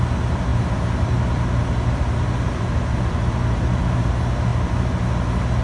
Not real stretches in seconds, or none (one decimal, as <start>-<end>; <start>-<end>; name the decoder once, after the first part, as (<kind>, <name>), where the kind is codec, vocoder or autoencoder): 0.5-3.8 (vocoder, BigVGAN v2)